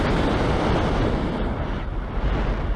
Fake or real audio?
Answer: real